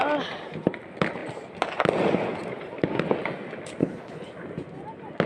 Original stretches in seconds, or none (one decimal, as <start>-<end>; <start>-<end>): 0.0-3.8; 4.3-5.3